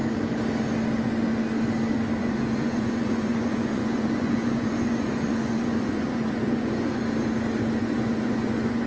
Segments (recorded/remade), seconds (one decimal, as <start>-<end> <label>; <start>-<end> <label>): 0.0-2.2 recorded; 2.2-7.0 remade; 7.0-7.8 recorded; 7.8-8.9 remade